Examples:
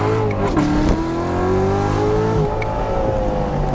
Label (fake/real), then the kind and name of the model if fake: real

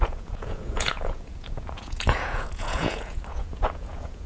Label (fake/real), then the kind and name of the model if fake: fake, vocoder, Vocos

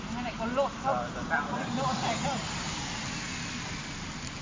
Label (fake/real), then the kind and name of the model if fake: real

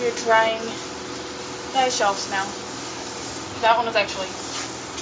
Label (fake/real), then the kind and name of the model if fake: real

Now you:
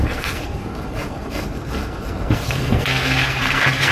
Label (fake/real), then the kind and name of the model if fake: fake, codec, SNAC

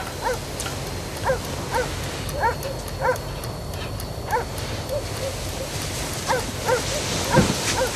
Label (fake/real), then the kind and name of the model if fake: real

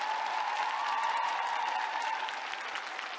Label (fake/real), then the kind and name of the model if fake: real